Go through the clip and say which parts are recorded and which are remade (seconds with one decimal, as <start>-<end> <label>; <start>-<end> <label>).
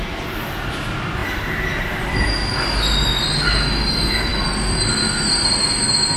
0.0-6.2 recorded